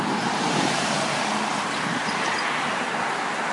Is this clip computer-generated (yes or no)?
yes